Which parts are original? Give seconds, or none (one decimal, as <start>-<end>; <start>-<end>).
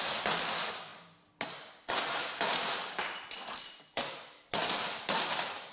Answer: 0.0-5.7